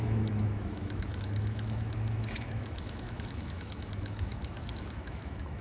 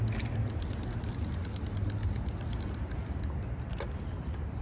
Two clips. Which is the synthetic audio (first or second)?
first